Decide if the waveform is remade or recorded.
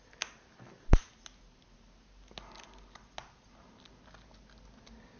recorded